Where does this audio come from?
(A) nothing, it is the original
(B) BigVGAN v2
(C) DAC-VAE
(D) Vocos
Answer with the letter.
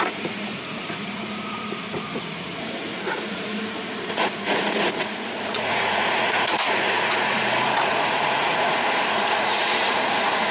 D